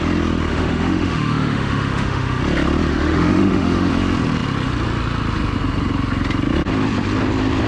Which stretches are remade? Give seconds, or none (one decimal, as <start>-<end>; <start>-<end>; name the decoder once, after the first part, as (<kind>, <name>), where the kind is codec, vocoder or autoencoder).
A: 0.5-2.4 (autoencoder, DAC-VAE); 2.9-3.9